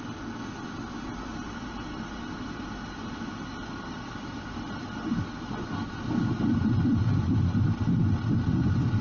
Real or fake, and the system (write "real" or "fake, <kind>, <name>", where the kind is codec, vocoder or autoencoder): real